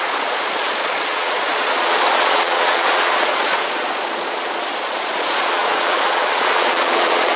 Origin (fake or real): fake